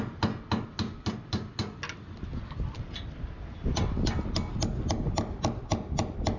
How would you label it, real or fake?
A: real